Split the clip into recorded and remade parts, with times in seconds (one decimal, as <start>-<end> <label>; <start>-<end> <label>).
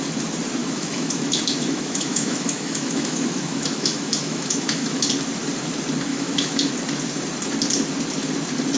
0.0-0.6 recorded; 0.6-5.1 remade; 5.1-6.1 recorded; 6.1-6.7 remade; 6.7-8.8 recorded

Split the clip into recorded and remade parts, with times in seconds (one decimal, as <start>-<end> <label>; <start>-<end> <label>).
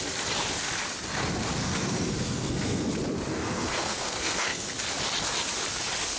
0.0-1.6 recorded; 1.6-2.9 remade; 2.9-3.3 recorded; 3.3-4.6 remade; 4.6-6.2 recorded